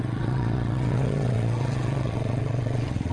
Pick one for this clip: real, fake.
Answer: fake